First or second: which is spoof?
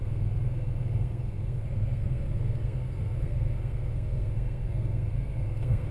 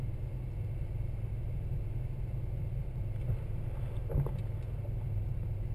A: first